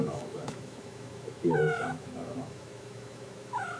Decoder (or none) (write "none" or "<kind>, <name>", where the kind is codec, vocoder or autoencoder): autoencoder, DAC-VAE